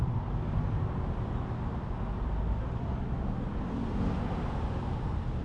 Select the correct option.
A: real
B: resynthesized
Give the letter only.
A